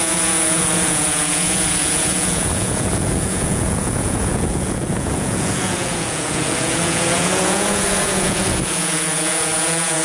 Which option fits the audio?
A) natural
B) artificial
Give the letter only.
B